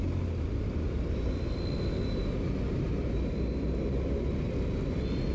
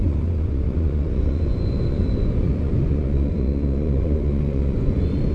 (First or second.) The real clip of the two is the first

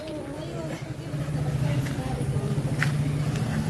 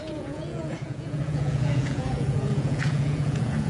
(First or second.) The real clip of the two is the first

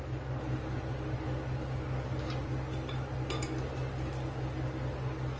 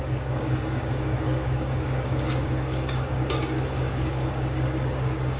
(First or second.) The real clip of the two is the first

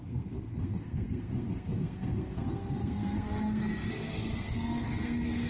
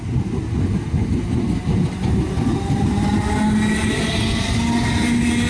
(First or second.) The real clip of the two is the second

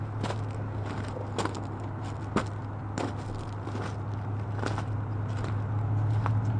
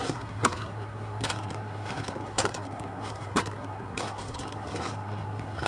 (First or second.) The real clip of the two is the first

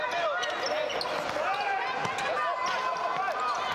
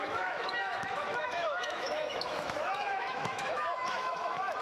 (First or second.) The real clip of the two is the first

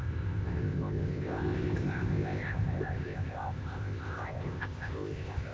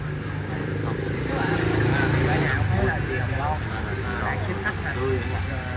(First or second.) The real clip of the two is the second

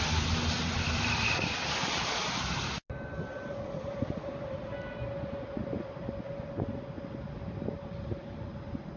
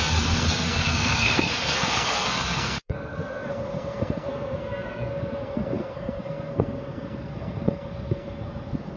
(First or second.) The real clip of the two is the first